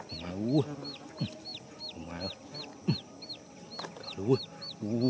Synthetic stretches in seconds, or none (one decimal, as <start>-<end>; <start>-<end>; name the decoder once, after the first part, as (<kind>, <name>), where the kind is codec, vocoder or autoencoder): none